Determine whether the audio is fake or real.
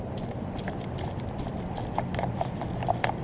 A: fake